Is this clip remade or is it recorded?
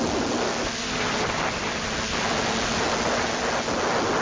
recorded